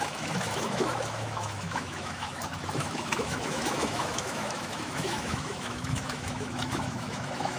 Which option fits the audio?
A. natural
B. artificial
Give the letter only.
B